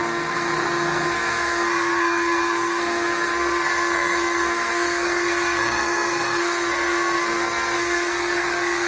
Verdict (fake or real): fake